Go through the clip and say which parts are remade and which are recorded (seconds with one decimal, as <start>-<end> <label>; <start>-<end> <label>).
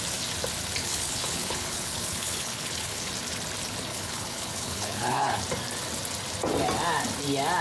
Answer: 0.0-0.8 recorded; 0.8-3.1 remade; 3.1-3.9 recorded; 3.9-5.4 remade; 5.4-7.6 recorded